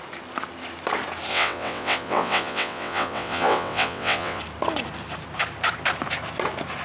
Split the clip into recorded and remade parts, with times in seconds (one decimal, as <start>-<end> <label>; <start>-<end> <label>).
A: 0.0-1.3 recorded; 1.3-4.4 remade; 4.4-6.8 recorded